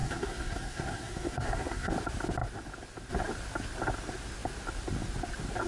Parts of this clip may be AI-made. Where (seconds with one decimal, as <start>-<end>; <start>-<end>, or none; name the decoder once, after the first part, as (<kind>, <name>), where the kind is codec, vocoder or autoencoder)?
0.0-1.9 (codec, SNAC)